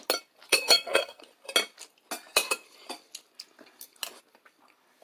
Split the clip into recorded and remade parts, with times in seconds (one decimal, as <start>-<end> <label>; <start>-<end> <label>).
0.0-0.5 recorded; 0.5-1.2 remade; 1.2-5.0 recorded

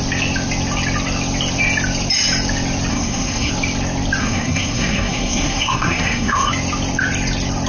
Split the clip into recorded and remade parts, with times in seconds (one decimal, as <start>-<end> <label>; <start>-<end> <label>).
0.0-2.9 recorded; 2.9-3.5 remade; 3.5-4.2 recorded; 4.2-6.5 remade; 6.5-7.7 recorded

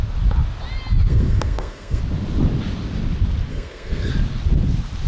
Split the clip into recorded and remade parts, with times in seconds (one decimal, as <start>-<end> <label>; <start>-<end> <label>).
0.0-1.1 recorded; 1.1-2.0 remade; 2.0-3.5 recorded; 3.5-4.1 remade; 4.1-5.1 recorded